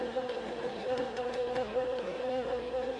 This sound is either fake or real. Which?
fake